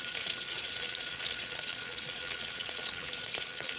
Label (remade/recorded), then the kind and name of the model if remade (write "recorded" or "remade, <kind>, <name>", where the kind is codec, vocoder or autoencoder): remade, vocoder, Vocos